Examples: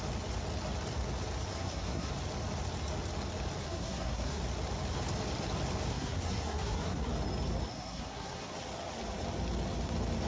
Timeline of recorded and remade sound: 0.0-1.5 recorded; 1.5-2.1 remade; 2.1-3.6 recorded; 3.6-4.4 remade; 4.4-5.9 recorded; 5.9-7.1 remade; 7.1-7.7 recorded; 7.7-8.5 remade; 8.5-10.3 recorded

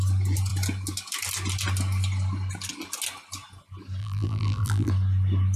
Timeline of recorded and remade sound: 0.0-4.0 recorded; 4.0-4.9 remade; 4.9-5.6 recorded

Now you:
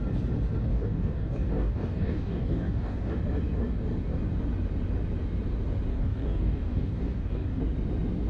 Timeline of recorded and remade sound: 0.0-0.7 recorded; 0.7-3.2 remade; 3.2-5.9 recorded; 5.9-7.6 remade; 7.6-8.3 recorded